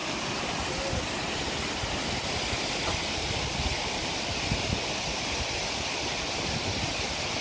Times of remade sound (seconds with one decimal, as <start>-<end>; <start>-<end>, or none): 0.0-0.7; 3.8-4.4